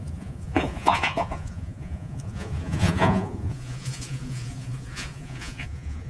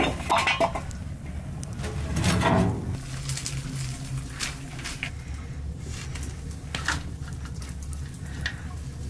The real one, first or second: second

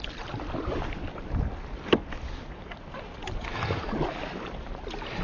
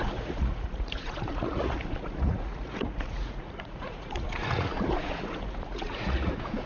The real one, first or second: first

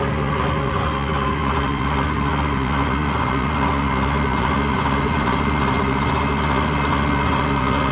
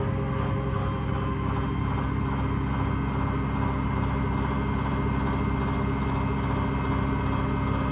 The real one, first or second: second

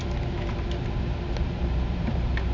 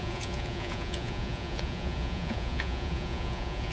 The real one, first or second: first